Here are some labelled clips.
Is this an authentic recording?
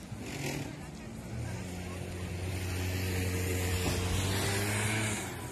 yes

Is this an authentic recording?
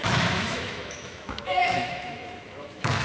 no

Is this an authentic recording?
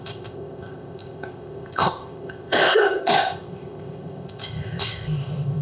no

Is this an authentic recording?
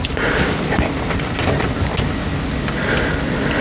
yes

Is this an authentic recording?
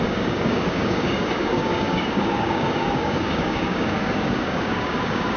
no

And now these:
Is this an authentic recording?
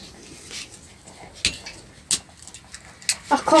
yes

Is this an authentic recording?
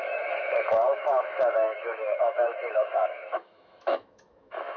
no